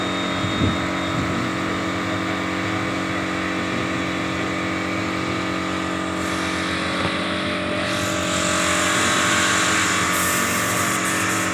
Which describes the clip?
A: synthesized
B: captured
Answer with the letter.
B